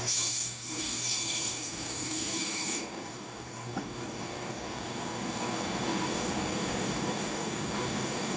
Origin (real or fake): fake